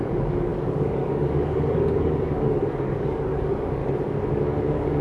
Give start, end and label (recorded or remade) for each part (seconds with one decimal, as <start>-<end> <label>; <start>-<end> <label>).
0.0-3.8 remade; 3.8-4.3 recorded; 4.3-5.0 remade